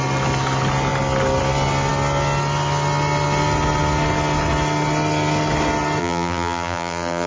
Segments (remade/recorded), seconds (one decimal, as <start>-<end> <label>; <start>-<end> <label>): 0.0-6.0 recorded; 6.0-7.3 remade